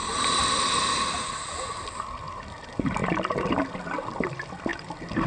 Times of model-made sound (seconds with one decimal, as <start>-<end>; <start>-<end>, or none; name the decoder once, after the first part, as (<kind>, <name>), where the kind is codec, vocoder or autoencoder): none